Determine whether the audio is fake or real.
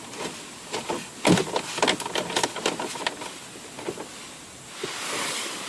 real